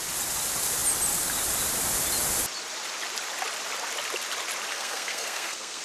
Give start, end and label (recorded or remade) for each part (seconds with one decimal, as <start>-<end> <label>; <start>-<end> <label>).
0.0-4.7 recorded; 4.7-5.8 remade